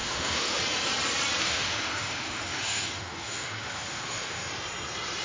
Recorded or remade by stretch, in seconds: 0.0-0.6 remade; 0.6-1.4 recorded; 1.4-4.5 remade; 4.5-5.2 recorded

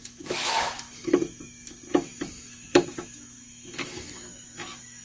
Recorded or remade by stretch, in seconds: 0.0-5.0 remade

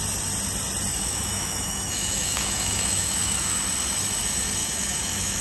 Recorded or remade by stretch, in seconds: 0.0-0.9 recorded; 0.9-3.6 remade; 3.6-4.6 recorded; 4.6-5.4 remade